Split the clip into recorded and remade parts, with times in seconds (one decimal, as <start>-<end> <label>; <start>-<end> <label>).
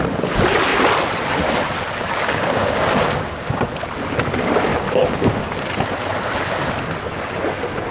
0.0-2.0 recorded; 2.0-3.6 remade; 3.6-4.7 recorded; 4.7-5.7 remade; 5.7-7.9 recorded